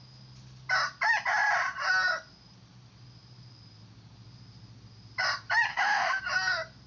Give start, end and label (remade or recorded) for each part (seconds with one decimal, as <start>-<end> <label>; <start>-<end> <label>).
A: 0.0-5.7 recorded; 5.7-6.2 remade; 6.2-6.9 recorded